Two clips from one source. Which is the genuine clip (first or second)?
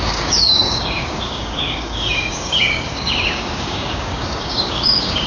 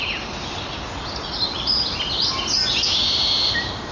second